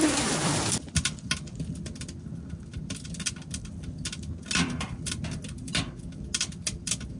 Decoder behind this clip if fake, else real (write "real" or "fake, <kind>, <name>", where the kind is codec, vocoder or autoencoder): real